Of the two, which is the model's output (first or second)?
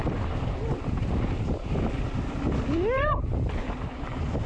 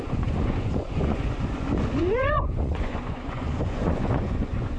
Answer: second